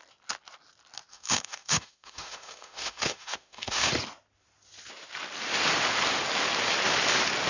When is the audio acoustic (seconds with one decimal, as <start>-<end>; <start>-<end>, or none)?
0.0-1.1; 3.9-7.5